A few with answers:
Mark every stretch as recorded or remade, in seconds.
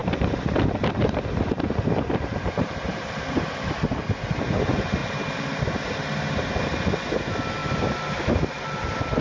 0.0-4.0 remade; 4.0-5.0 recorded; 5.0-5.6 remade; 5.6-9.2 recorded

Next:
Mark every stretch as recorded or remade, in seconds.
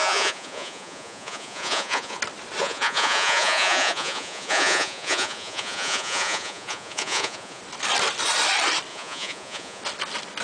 0.0-2.2 remade; 2.2-2.6 recorded; 2.6-7.6 remade; 7.6-8.9 recorded; 8.9-9.8 remade; 9.8-10.4 recorded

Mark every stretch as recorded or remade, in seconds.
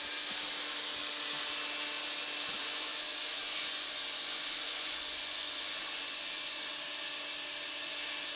0.0-2.6 recorded; 2.6-6.7 remade; 6.7-8.4 recorded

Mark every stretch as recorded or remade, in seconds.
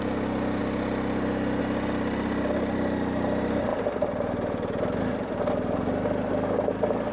0.0-7.1 recorded